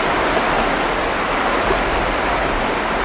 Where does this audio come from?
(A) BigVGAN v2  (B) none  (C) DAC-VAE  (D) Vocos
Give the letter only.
B